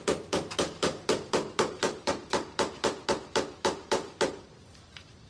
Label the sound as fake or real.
fake